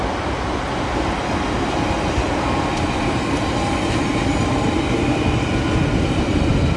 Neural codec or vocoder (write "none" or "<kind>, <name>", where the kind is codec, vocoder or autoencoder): none